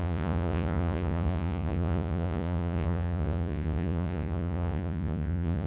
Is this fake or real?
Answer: fake